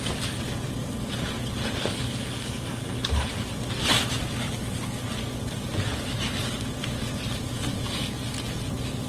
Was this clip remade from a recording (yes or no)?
no